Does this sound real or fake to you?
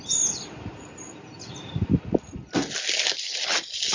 real